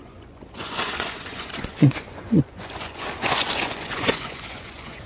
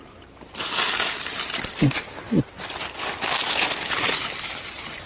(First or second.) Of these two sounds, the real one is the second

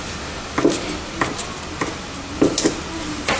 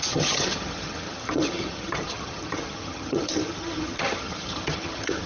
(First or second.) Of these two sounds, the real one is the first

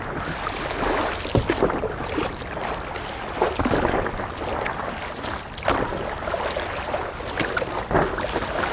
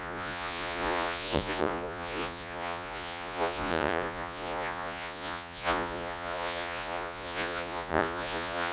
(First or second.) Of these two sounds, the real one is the first